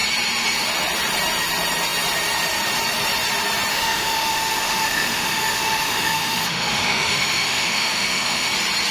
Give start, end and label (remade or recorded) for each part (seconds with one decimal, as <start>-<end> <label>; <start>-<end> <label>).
0.0-3.7 recorded; 3.7-8.5 remade; 8.5-8.9 recorded